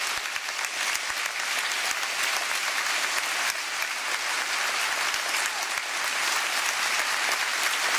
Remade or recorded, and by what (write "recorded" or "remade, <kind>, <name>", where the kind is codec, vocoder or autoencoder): recorded